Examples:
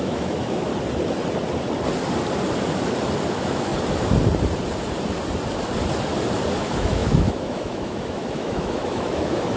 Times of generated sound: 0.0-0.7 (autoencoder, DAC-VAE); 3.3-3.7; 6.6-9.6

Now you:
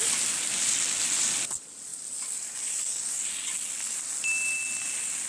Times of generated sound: none

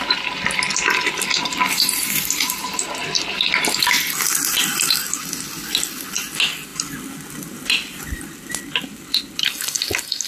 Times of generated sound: 1.4-3.6 (vocoder, BigVGAN v2)

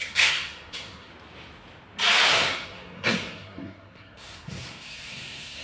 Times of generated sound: 0.0-1.1 (codec, SNAC); 2.3-5.6

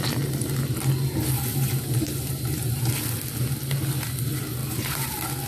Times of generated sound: 1.5-2.9 (vocoder, BigVGAN v2); 4.6-5.1